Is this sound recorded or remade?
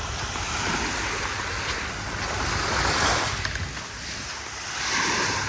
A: recorded